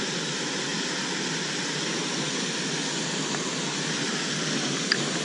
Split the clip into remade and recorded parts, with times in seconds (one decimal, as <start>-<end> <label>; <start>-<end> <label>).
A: 0.0-5.2 recorded